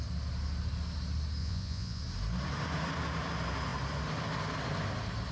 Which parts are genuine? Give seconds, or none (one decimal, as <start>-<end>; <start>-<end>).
0.0-1.4; 2.0-5.3